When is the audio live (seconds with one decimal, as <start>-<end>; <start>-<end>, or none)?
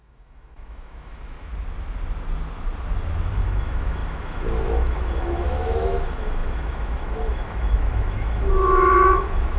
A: 1.5-3.3